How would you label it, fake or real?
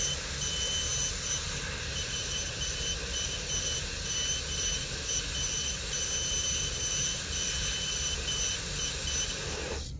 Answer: real